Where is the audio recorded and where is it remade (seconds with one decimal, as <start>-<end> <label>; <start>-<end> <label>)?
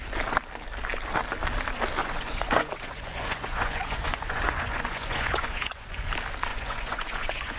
0.0-2.0 recorded; 2.0-6.1 remade; 6.1-6.5 recorded; 6.5-7.6 remade